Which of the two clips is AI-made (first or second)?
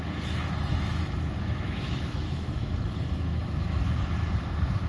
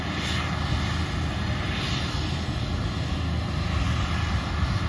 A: first